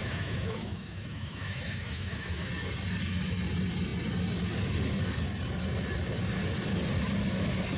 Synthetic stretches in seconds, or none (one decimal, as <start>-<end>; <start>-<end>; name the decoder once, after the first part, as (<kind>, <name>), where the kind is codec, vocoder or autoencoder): 0.0-2.5 (autoencoder, DAC-VAE)